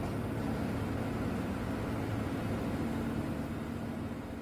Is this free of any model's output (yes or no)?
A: yes